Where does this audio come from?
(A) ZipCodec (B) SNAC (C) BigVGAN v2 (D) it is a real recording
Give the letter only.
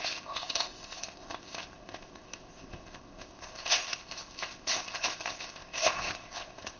A